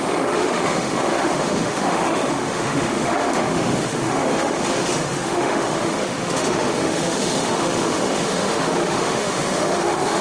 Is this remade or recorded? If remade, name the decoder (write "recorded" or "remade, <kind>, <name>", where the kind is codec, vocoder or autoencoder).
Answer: remade, autoencoder, DAC-VAE